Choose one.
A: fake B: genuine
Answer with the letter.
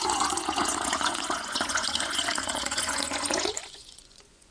A